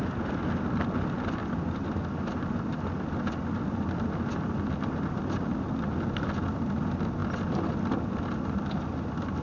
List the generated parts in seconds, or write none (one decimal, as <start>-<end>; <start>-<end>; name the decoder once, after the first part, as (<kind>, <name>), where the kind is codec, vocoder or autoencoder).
none